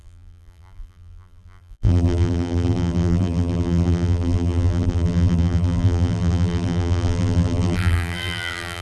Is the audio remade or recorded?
remade